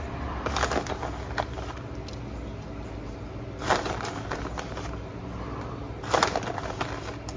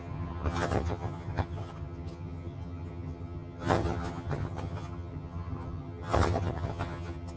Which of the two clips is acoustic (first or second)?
first